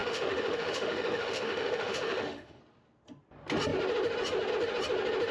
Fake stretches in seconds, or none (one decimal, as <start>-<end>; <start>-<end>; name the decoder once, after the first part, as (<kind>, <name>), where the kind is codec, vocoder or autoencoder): 0.0-2.6 (autoencoder, DAC-VAE)

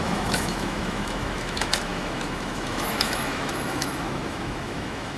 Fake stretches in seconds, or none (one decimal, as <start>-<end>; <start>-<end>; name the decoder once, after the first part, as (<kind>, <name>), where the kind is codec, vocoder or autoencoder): 0.0-5.2 (autoencoder, DAC-VAE)

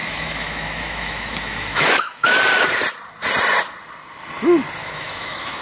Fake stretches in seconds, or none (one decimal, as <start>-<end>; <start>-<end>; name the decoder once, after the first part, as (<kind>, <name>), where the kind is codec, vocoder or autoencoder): 0.0-2.4 (autoencoder, DAC-VAE); 4.8-5.6

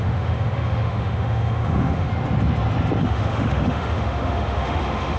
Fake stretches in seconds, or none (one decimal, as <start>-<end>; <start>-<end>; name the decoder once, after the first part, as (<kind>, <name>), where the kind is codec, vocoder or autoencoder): 0.0-2.1 (autoencoder, DAC-VAE); 3.0-5.2

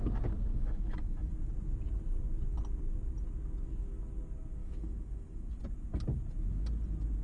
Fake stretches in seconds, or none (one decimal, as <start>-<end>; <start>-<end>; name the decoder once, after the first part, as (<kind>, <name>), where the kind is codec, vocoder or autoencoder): 0.5-1.3 (autoencoder, DAC-VAE); 4.6-5.5

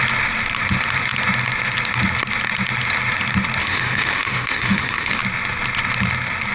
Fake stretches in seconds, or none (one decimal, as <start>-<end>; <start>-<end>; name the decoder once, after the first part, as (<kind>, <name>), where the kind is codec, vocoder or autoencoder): 3.6-5.2 (autoencoder, DAC-VAE)

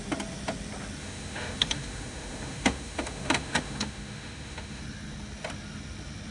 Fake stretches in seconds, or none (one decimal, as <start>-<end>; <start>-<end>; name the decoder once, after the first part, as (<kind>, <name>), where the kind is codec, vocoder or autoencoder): 1.0-4.8 (autoencoder, DAC-VAE)

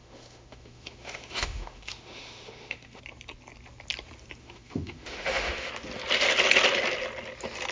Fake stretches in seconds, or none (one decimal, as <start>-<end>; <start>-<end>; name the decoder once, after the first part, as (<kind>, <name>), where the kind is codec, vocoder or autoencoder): 0.0-3.0 (autoencoder, DAC-VAE); 4.4-5.7